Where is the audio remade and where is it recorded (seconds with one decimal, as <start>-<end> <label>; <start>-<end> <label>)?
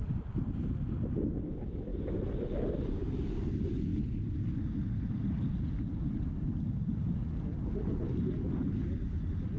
0.0-9.6 recorded